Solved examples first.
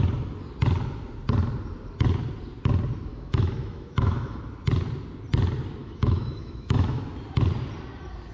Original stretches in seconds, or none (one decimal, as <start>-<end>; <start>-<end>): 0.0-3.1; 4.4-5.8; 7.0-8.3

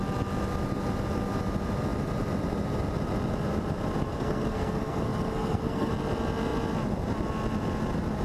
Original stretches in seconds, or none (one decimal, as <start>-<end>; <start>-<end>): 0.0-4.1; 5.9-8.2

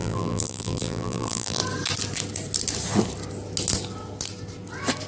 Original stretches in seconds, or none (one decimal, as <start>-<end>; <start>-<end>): 1.6-5.1

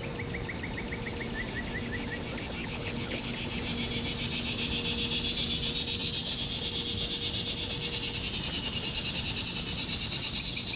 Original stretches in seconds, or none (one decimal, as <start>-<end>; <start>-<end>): 0.0-2.6; 3.3-10.8

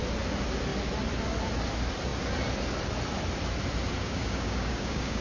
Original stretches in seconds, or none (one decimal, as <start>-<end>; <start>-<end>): 0.0-4.0

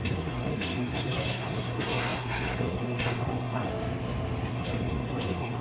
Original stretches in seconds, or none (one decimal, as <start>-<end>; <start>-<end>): 3.7-4.5

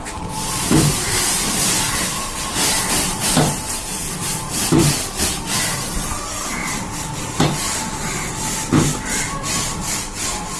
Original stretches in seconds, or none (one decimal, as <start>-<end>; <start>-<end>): none

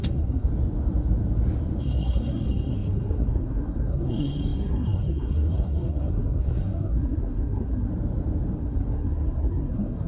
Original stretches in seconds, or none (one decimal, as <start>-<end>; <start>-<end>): 0.5-1.8; 7.9-8.6